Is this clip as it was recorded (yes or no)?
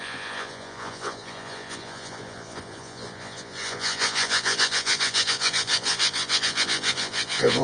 no